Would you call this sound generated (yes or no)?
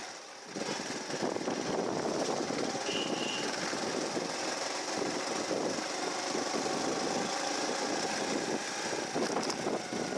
no